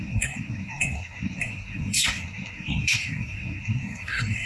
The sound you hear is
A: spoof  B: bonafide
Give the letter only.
A